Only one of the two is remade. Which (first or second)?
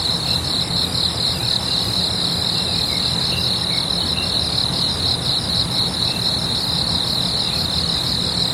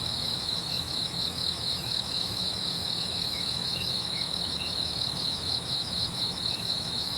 second